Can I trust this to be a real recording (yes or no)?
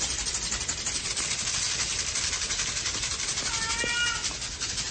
yes